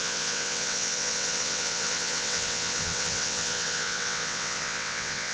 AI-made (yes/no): yes